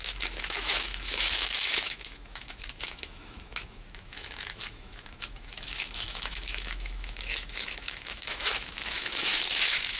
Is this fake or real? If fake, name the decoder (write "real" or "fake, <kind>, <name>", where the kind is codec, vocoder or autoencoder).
fake, autoencoder, DAC-VAE